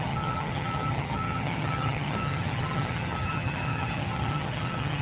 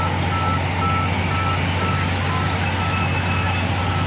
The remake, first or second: first